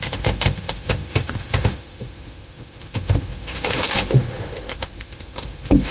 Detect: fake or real fake